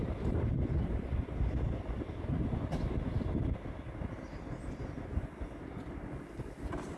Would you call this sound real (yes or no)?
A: yes